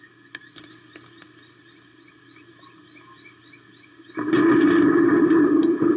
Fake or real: real